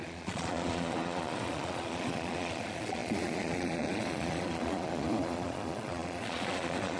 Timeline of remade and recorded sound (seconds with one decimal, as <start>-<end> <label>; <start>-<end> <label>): 0.0-7.0 remade